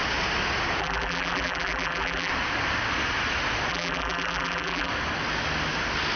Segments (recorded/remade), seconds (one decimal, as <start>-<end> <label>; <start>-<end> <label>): 0.0-0.8 recorded; 0.8-2.3 remade; 2.3-3.7 recorded; 3.7-4.9 remade; 4.9-6.2 recorded